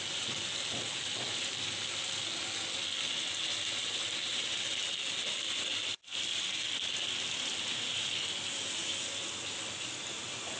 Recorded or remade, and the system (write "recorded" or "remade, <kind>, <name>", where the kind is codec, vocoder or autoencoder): recorded